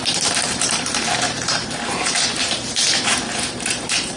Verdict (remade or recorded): remade